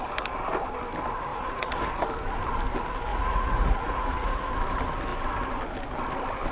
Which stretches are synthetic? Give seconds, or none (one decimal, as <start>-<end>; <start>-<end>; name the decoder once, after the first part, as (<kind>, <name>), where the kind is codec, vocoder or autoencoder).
1.3-1.9 (vocoder, Vocos); 3.1-4.5